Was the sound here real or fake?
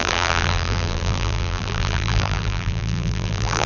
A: fake